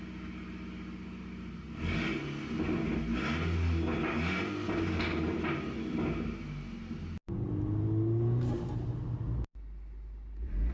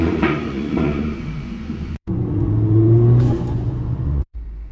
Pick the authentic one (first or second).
first